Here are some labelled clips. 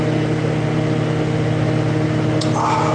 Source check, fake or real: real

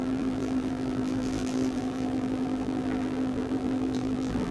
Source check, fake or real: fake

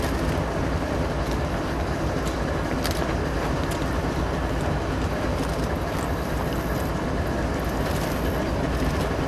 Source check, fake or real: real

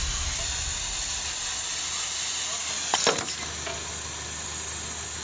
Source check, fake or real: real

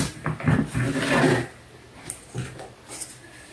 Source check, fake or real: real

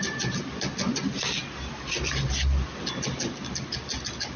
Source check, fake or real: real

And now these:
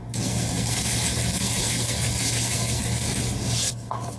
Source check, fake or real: fake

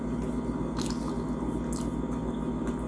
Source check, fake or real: real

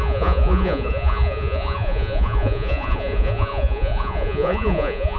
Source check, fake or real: fake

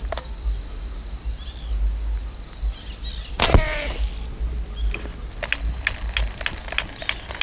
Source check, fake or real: real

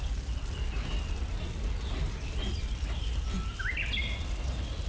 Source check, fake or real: real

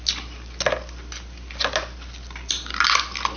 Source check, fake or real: real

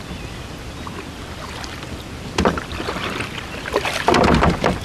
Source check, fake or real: real